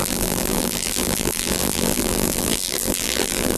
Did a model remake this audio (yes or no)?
yes